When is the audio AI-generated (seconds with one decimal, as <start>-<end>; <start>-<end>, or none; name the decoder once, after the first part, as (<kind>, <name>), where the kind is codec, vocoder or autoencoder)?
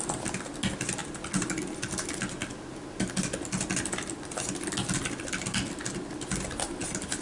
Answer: none